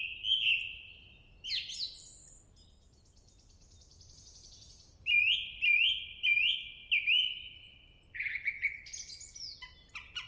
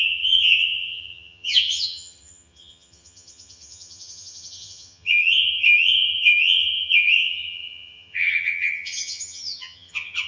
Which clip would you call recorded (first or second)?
first